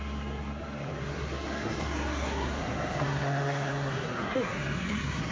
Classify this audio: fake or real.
fake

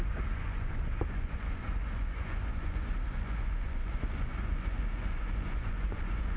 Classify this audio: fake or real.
fake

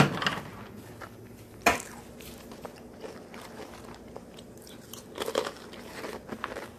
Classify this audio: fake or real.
real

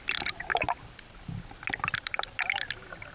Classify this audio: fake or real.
real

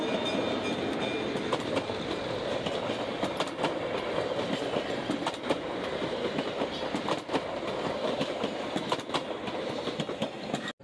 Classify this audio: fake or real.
real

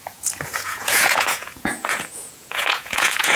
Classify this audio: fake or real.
fake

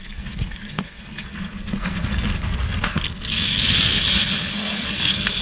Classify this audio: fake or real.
fake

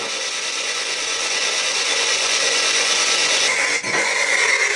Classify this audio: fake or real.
fake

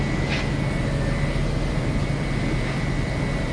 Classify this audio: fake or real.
real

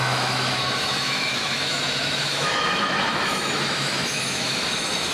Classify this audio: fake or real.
fake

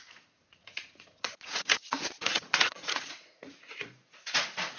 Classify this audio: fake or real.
fake